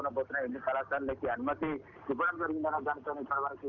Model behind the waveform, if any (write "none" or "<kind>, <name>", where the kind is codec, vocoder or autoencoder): none